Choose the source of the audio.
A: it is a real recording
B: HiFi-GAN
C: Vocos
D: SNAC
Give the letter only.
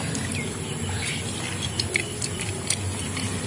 A